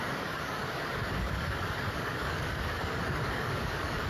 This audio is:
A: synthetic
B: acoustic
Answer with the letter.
A